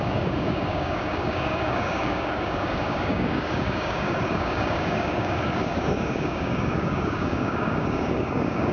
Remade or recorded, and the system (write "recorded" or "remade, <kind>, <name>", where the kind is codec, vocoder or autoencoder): remade, codec, DAC